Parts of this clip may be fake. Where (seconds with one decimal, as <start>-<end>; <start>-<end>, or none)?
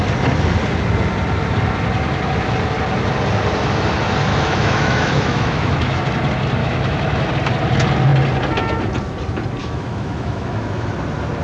4.3-6.0; 6.6-7.3; 9.6-10.9